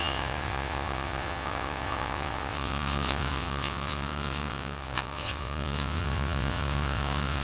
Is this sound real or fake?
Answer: fake